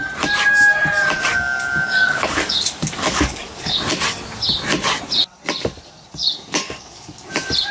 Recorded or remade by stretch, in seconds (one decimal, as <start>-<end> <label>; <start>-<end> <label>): 0.0-1.3 recorded; 1.3-3.8 remade; 3.8-6.2 recorded; 6.2-7.3 remade; 7.3-7.7 recorded